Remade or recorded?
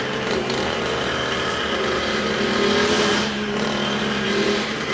remade